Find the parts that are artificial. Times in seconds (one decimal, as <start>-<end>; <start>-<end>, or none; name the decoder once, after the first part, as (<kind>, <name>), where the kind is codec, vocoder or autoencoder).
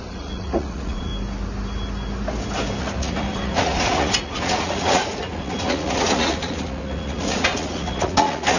0.0-1.1 (vocoder, Vocos); 2.8-8.6